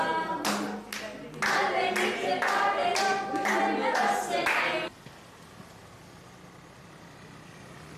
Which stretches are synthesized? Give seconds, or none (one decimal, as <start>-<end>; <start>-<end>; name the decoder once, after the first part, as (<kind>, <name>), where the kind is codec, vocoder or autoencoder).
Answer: none